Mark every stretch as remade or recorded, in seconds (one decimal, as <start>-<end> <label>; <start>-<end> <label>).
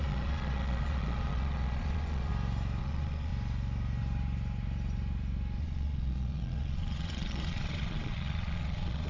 0.0-2.3 remade; 2.3-2.8 recorded; 2.8-3.3 remade; 3.3-5.6 recorded; 5.6-9.1 remade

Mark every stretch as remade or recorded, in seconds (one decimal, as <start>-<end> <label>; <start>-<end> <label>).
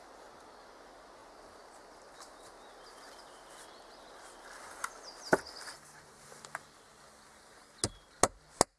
0.0-8.8 recorded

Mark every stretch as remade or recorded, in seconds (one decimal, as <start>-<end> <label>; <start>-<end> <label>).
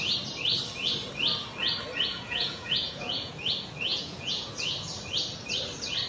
0.0-2.1 recorded; 2.1-3.4 remade; 3.4-3.9 recorded; 3.9-4.5 remade; 4.5-6.1 recorded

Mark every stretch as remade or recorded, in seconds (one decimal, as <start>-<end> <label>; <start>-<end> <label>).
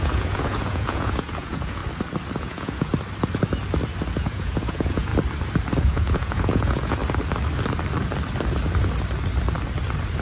0.0-1.8 remade; 1.8-2.4 recorded; 2.4-2.9 remade; 2.9-4.2 recorded; 4.2-5.1 remade; 5.1-5.8 recorded; 5.8-7.0 remade; 7.0-10.2 recorded